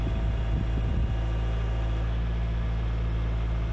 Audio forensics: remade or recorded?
recorded